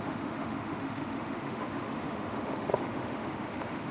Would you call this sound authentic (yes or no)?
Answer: no